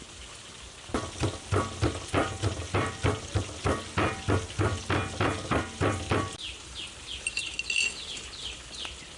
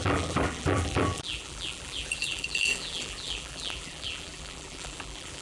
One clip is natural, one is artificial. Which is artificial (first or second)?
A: second